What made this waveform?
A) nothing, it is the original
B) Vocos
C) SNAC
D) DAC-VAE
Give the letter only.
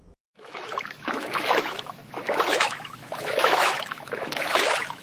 D